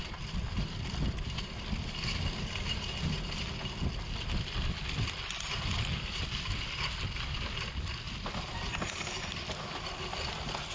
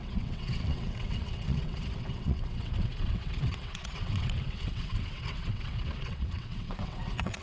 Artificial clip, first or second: second